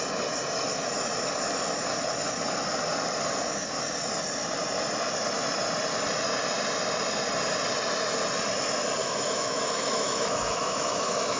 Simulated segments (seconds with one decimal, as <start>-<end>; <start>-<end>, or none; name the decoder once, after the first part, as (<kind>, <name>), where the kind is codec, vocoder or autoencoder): 9.0-11.4 (autoencoder, DAC-VAE)